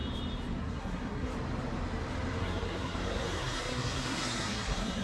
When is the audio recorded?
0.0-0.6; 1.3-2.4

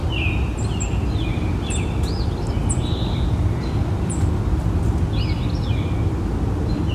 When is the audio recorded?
0.0-6.9

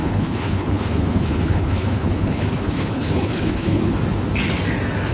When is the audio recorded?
3.8-5.1